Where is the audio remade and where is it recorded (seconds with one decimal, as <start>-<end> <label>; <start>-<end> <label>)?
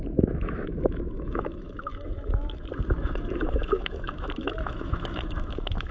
0.0-5.9 remade